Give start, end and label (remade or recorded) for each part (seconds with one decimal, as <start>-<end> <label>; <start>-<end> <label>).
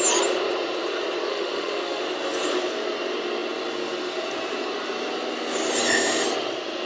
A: 0.0-1.3 recorded; 1.3-2.0 remade; 2.0-6.9 recorded